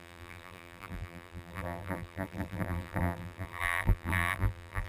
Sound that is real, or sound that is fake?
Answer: fake